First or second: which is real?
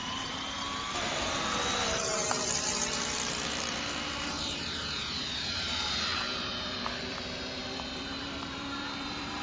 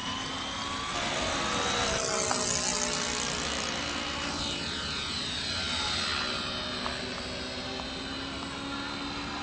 second